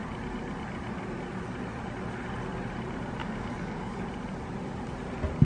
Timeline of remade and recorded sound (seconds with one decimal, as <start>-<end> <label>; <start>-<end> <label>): 0.0-3.2 recorded; 3.2-4.0 remade; 4.0-5.4 recorded